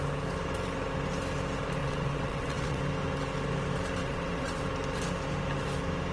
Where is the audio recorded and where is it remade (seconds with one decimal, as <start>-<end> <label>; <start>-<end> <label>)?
0.0-1.8 recorded; 1.8-2.8 remade; 2.8-4.0 recorded; 4.0-4.6 remade; 4.6-6.1 recorded